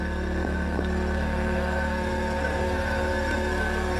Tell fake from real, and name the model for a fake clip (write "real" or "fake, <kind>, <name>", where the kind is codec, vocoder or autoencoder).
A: fake, codec, SNAC